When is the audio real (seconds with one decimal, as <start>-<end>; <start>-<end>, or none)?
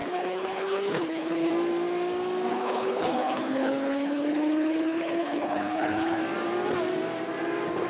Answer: 1.5-2.5; 6.2-7.9